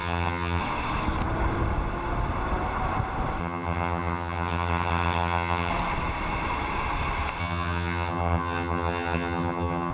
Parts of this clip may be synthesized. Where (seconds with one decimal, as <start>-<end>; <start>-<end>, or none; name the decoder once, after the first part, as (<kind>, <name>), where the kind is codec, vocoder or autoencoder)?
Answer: 0.0-0.6 (vocoder, HiFi-GAN); 3.4-5.7; 7.4-9.9